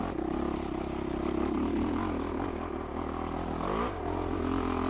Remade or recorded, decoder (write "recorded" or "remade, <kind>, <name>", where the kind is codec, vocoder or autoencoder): recorded